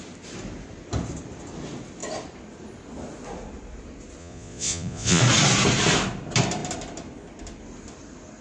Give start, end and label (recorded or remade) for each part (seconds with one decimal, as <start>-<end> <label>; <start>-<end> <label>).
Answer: 0.0-4.2 recorded; 4.2-5.2 remade; 5.2-8.4 recorded